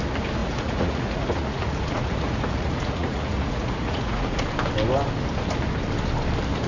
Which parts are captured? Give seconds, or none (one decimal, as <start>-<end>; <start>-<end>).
0.0-0.4; 4.4-6.7